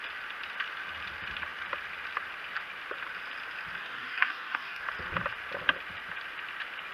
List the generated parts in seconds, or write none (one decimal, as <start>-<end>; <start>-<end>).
3.8-4.8